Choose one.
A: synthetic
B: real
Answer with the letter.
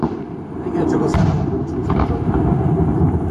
A